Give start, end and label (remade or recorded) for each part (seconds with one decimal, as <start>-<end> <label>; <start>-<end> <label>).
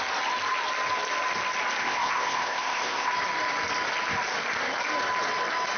0.0-1.8 recorded; 1.8-3.1 remade; 3.1-5.8 recorded